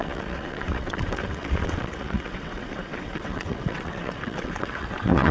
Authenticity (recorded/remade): remade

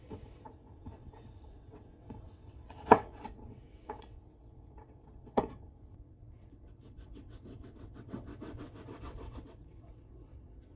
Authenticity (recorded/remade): remade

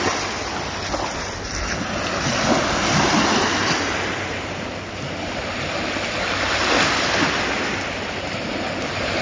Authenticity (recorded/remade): recorded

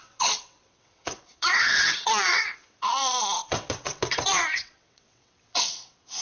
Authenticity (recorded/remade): remade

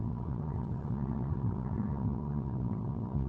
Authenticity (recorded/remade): remade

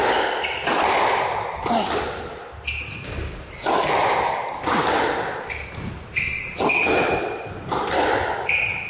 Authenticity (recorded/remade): recorded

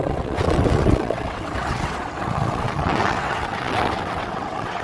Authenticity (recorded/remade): remade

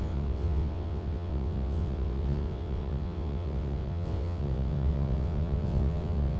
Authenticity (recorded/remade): remade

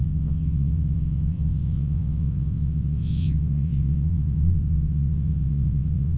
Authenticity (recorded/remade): remade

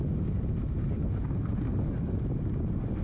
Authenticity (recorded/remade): recorded